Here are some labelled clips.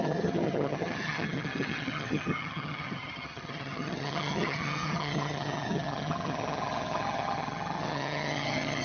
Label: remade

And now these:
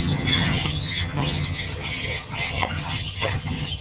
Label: remade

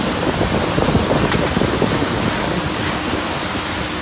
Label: recorded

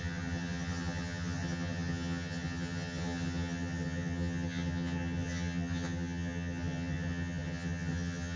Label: remade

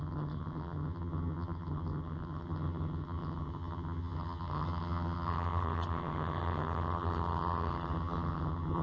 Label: remade